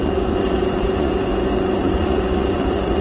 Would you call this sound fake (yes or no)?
yes